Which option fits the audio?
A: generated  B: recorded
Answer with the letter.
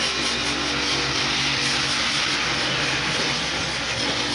B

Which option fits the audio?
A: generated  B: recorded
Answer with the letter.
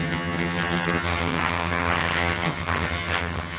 A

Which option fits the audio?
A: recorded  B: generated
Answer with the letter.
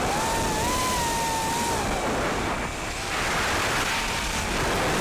A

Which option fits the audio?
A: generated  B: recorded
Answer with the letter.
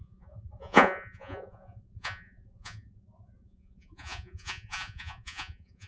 A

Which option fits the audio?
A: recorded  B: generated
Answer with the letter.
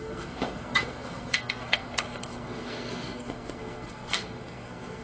B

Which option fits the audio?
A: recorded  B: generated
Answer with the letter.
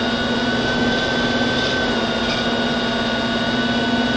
A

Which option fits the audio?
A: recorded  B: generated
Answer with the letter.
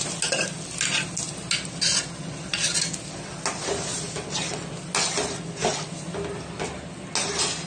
A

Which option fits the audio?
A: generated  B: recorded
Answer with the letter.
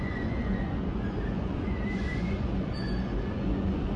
A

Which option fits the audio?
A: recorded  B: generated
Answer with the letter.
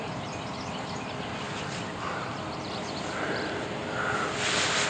B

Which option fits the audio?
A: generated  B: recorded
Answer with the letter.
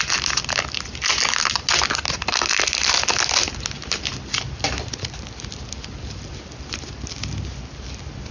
B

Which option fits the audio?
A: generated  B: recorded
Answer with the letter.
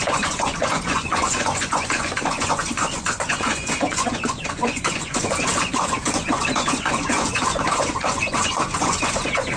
A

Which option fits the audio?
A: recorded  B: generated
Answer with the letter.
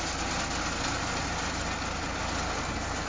A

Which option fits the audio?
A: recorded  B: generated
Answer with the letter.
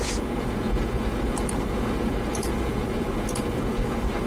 B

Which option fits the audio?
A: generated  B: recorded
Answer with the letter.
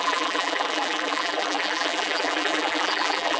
A